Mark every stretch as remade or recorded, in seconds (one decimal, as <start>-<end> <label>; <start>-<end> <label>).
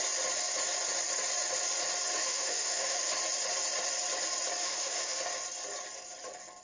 0.0-2.2 recorded; 2.2-3.0 remade; 3.0-4.6 recorded; 4.6-5.2 remade; 5.2-6.6 recorded